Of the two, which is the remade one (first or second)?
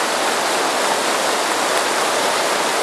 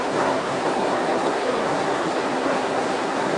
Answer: second